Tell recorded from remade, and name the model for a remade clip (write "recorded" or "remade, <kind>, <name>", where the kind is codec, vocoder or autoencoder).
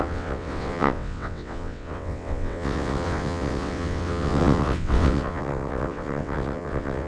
remade, vocoder, WaveNeXt